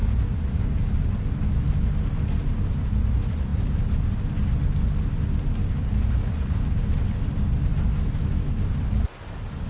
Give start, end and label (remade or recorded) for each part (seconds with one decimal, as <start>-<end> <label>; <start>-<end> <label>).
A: 0.0-9.7 recorded